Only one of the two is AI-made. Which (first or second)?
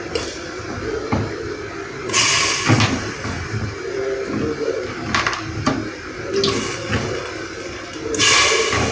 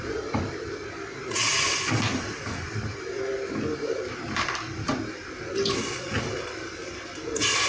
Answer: second